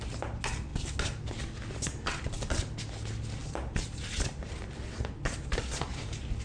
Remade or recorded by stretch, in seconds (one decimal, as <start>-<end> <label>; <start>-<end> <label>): 0.0-6.4 recorded